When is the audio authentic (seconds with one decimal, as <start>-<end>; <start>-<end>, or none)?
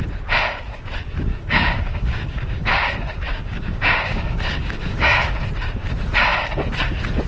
0.0-1.3; 2.9-3.3; 5.3-7.3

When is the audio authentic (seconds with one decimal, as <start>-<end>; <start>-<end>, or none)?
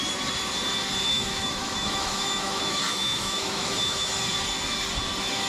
0.0-1.1; 4.1-5.5